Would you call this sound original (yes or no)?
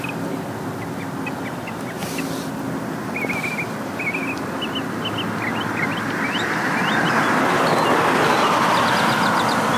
yes